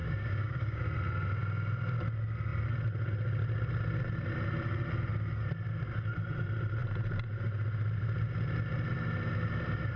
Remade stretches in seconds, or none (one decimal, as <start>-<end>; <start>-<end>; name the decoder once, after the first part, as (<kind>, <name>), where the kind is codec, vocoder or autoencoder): 0.0-0.8 (codec, DAC)